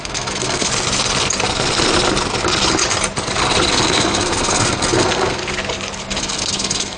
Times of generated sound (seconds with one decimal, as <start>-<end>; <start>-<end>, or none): 0.0-0.7; 3.7-5.4; 6.2-7.0